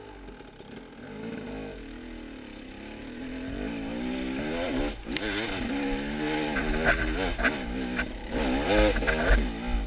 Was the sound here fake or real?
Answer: real